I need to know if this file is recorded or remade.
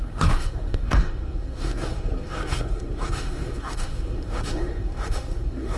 remade